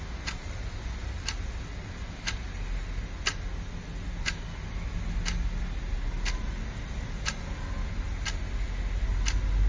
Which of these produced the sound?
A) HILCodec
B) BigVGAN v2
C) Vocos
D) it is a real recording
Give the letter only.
D